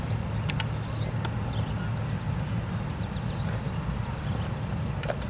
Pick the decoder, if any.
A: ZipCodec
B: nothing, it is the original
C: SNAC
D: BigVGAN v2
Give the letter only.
B